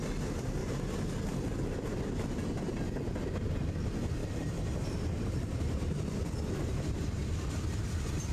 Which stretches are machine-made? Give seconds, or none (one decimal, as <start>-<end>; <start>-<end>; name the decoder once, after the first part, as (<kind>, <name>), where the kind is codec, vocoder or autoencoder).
4.2-5.8 (vocoder, BigVGAN v2)